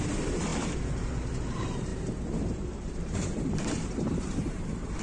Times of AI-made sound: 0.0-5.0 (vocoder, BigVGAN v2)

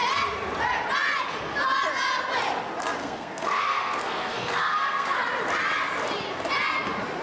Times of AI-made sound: 3.0-5.2 (codec, SNAC)

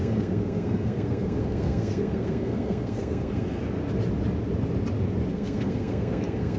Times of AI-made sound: 0.0-3.6 (codec, SNAC); 5.3-6.6